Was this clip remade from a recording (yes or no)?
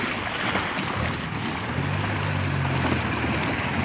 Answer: no